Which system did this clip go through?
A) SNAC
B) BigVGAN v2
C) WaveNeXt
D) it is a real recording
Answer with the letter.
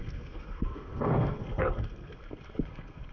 A